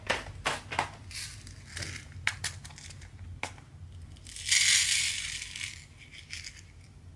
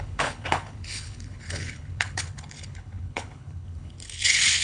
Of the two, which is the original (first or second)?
first